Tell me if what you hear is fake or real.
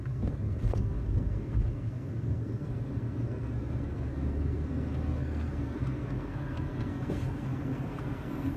fake